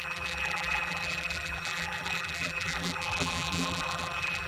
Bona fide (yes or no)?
no